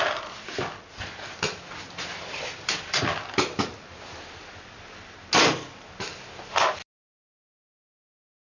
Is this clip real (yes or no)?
yes